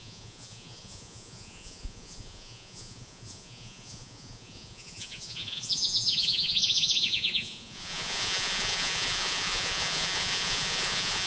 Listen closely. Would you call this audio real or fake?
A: fake